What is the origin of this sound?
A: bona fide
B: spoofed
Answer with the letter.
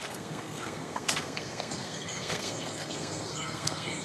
B